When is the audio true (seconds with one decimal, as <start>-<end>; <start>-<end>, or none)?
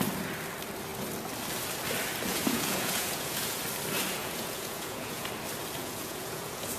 0.0-2.3; 3.6-4.2; 5.3-5.8